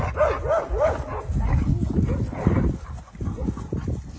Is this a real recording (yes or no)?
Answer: yes